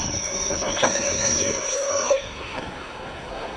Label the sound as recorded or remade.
remade